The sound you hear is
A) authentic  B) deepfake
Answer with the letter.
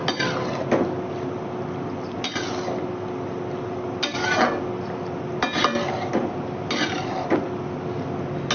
A